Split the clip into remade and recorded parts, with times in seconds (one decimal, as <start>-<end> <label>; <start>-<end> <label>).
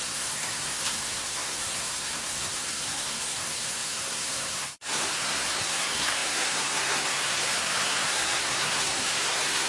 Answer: 0.0-9.7 remade